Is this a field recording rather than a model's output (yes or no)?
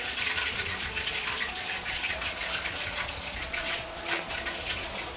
no